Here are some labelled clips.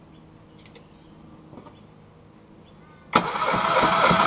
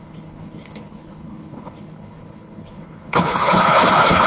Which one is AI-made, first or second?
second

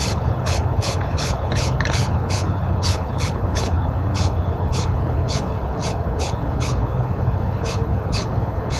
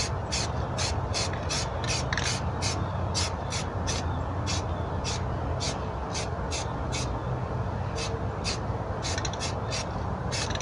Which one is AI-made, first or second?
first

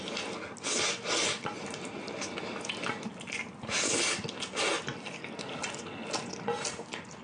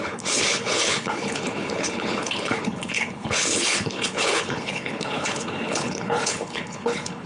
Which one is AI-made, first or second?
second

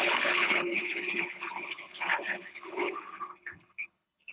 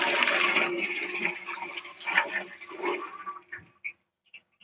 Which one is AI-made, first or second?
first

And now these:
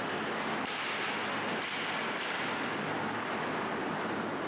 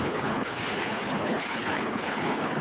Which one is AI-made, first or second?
second